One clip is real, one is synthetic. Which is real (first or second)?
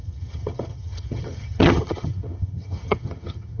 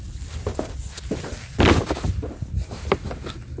second